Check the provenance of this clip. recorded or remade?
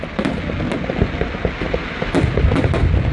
recorded